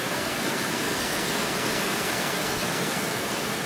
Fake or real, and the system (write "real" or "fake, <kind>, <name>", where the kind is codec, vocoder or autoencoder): fake, codec, SNAC